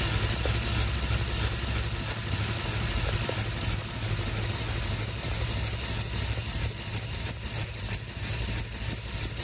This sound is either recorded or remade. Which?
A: recorded